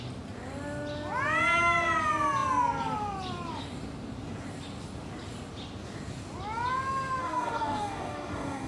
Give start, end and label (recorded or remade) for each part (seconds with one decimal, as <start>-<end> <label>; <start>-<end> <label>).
0.0-7.2 recorded; 7.2-8.7 remade